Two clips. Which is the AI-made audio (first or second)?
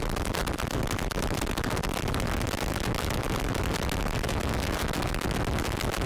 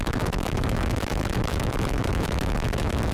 second